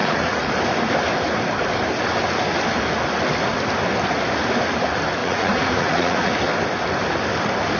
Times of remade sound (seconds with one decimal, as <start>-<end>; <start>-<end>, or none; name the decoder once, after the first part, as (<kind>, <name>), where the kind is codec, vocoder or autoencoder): 0.0-0.5 (vocoder, Vocos); 5.2-6.3